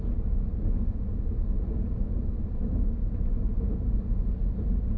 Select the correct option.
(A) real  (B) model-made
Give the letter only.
A